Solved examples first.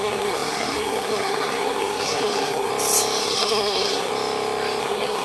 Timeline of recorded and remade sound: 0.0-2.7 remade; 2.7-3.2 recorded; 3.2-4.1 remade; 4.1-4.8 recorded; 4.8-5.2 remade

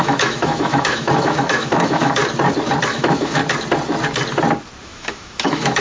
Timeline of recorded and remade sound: 0.0-2.2 remade; 2.2-2.9 recorded; 2.9-3.4 remade; 3.4-4.8 recorded; 4.8-5.8 remade

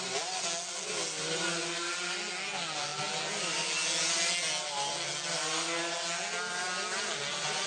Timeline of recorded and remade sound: 0.0-7.7 recorded

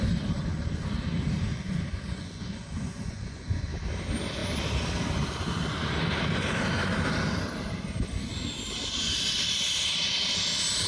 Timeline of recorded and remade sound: 0.0-1.5 recorded; 1.5-3.7 remade; 3.7-10.9 recorded